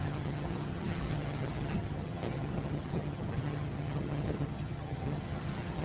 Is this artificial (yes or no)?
yes